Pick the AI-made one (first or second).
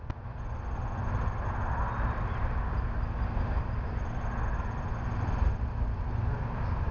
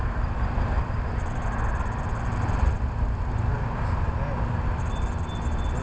second